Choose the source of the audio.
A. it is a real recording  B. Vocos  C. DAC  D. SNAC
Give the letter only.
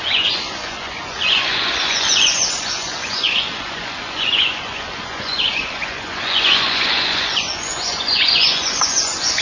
B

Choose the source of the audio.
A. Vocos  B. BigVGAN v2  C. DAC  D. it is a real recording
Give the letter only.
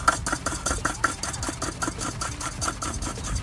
D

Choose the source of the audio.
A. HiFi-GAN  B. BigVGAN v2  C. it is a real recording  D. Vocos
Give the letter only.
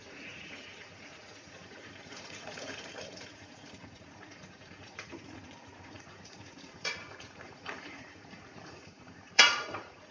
D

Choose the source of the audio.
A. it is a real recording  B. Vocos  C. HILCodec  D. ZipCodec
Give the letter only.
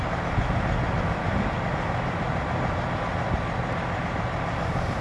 A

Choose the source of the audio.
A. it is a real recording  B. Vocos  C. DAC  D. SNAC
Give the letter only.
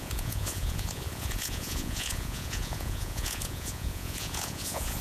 B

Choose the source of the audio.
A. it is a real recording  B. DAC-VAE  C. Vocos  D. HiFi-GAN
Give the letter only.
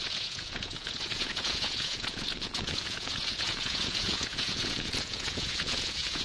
C